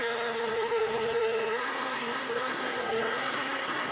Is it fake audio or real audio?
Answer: fake